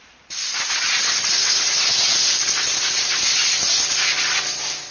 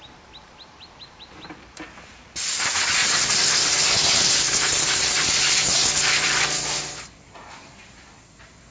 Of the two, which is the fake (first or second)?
second